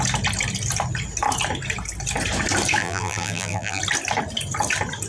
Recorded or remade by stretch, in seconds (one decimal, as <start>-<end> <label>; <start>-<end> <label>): 0.0-2.8 recorded; 2.8-3.8 remade; 3.8-5.1 recorded